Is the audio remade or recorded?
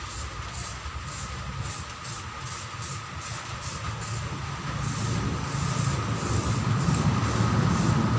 recorded